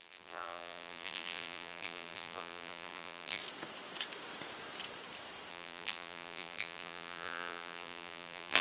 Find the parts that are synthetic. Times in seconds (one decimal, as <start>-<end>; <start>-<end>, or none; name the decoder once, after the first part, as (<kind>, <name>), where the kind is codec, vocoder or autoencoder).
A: 0.0-3.4 (vocoder, BigVGAN v2); 5.5-8.6